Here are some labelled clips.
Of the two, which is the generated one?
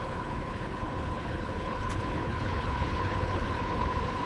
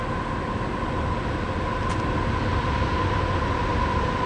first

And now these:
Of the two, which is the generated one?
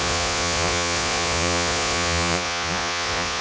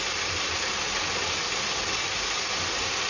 first